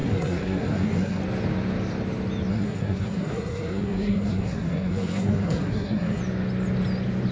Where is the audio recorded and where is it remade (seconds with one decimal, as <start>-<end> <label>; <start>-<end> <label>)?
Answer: 0.0-1.2 remade; 1.2-2.5 recorded; 2.5-6.2 remade; 6.2-7.3 recorded